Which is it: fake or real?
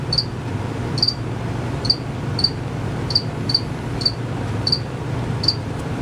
fake